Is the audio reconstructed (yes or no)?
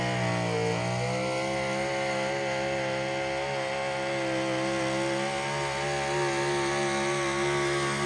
no